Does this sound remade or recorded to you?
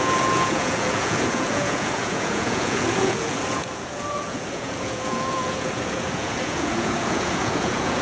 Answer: remade